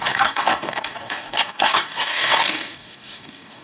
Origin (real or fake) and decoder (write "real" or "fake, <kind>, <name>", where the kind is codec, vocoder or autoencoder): fake, codec, DAC